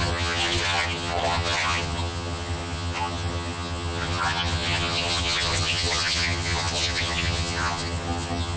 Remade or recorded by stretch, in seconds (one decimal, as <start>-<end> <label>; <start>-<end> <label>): 0.0-8.6 remade

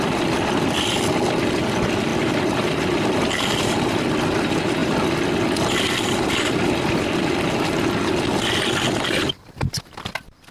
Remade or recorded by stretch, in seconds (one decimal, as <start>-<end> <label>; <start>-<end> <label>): 0.0-2.1 recorded; 2.1-4.0 remade; 4.0-10.5 recorded

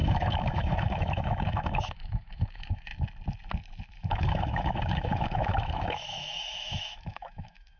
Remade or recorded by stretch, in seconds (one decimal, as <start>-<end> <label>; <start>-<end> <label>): 0.0-2.9 remade; 2.9-3.8 recorded; 3.8-7.8 remade

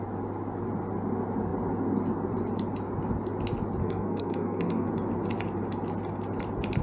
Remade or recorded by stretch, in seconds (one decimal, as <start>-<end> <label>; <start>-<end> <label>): 0.0-3.8 recorded; 3.8-4.9 remade; 4.9-6.8 recorded

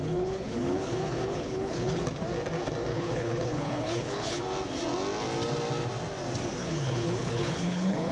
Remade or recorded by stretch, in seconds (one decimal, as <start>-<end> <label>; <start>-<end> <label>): 0.0-2.0 remade; 2.0-2.9 recorded; 2.9-4.4 remade; 4.4-6.6 recorded; 6.6-8.1 remade

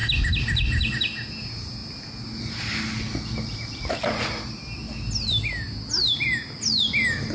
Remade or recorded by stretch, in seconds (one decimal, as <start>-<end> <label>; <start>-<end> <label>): 0.0-7.3 recorded